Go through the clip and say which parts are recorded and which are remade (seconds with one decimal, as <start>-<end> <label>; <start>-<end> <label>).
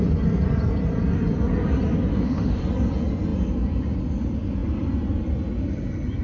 0.0-2.1 recorded; 2.1-2.6 remade; 2.6-6.2 recorded